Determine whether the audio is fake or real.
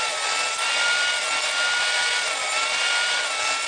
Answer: real